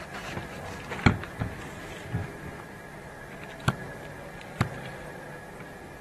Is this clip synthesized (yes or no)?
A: no